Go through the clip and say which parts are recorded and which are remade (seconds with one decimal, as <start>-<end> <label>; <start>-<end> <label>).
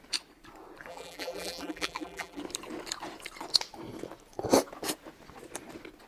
0.0-0.9 recorded; 0.9-2.4 remade; 2.4-6.1 recorded